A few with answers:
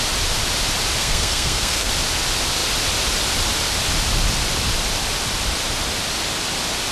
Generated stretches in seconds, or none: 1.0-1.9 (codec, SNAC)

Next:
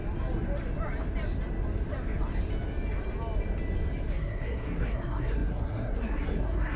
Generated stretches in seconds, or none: 4.1-6.8 (codec, SNAC)

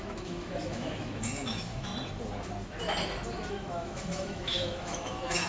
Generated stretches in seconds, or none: 0.0-1.9 (autoencoder, DAC-VAE); 3.5-5.5

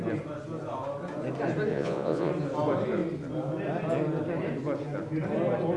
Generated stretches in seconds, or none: 1.7-2.3 (vocoder, Vocos)